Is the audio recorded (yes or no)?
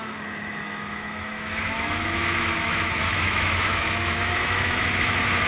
no